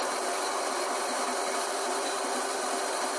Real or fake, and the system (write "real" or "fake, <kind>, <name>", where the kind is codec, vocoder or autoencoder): real